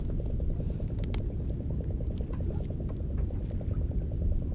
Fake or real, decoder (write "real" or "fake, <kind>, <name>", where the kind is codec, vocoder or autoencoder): real